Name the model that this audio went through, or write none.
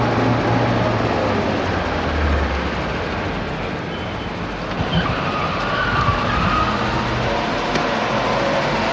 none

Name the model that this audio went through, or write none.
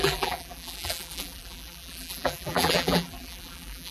vocoder, BigVGAN v2